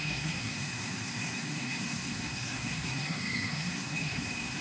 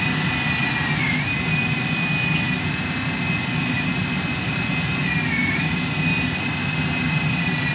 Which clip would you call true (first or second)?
second